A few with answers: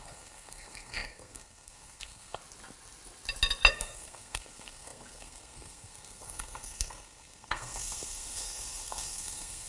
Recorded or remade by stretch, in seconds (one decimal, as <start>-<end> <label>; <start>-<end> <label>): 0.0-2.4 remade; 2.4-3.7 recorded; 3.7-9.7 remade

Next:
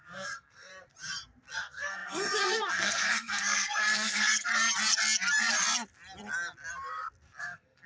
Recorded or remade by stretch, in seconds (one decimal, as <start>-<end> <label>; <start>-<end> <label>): 0.0-0.7 remade; 0.7-1.6 recorded; 1.6-4.5 remade; 4.5-7.4 recorded; 7.4-7.9 remade

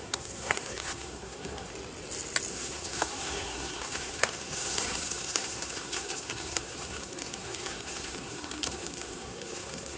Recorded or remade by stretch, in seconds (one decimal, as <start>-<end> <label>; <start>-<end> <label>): 0.0-1.7 remade; 1.7-2.5 recorded; 2.5-10.0 remade